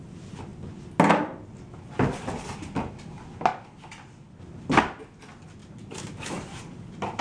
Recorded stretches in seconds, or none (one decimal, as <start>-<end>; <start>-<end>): 0.0-5.6